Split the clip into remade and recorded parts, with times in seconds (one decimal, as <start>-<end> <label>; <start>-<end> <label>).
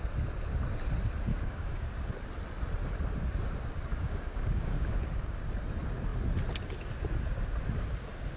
0.0-1.3 recorded; 1.3-1.9 remade; 1.9-3.9 recorded; 3.9-5.4 remade; 5.4-8.4 recorded